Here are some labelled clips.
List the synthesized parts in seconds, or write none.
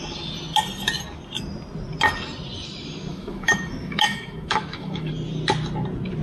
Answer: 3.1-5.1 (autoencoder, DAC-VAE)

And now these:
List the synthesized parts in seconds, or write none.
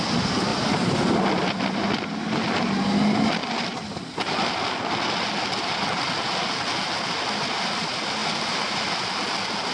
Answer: none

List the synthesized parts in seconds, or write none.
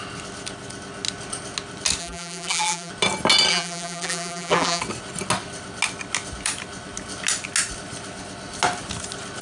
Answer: 2.0-2.9 (vocoder, BigVGAN v2); 3.5-4.8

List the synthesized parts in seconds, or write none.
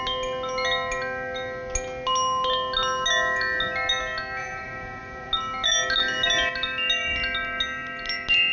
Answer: 4.4-5.3 (vocoder, Vocos)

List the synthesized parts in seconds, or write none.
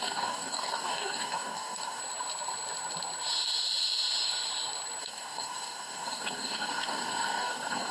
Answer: 0.0-2.0 (codec, DAC); 5.0-7.9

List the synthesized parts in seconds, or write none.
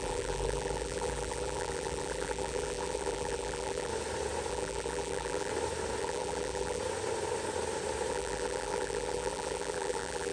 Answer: 0.0-3.9 (vocoder, BigVGAN v2); 4.5-5.5; 6.0-6.8; 8.1-10.3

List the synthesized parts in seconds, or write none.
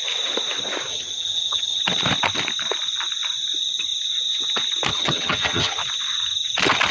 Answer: 0.9-1.8 (vocoder, HiFi-GAN); 4.9-5.8